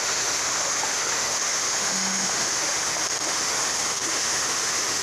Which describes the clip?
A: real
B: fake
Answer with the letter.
B